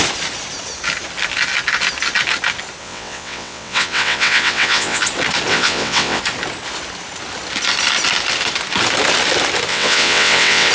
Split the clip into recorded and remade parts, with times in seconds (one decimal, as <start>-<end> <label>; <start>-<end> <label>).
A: 0.0-2.8 recorded; 2.8-5.0 remade; 5.0-5.5 recorded; 5.5-6.2 remade; 6.2-9.7 recorded; 9.7-10.7 remade